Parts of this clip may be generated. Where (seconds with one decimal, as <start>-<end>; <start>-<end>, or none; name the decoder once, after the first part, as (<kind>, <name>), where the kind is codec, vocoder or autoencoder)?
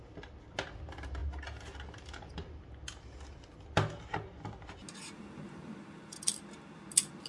none